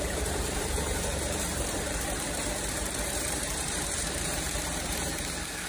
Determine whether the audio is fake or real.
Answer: fake